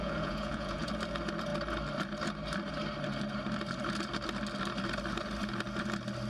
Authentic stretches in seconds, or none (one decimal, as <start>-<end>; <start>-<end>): 0.9-6.3